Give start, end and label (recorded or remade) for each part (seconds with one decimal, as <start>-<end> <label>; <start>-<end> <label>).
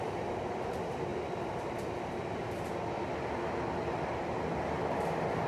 0.0-5.5 recorded